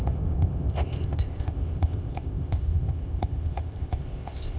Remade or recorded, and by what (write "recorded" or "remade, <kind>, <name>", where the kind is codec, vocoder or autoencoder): remade, codec, ZipCodec